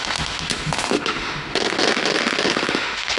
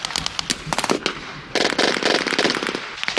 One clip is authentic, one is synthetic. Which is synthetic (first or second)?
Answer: first